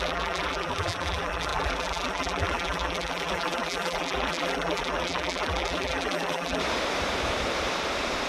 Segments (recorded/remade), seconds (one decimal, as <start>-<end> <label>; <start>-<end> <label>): 0.0-6.6 remade; 6.6-8.3 recorded